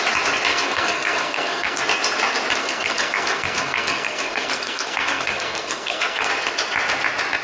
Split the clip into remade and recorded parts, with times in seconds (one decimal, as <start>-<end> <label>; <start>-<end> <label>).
0.0-0.5 recorded; 0.5-1.8 remade; 1.8-2.6 recorded; 2.6-6.3 remade; 6.3-7.4 recorded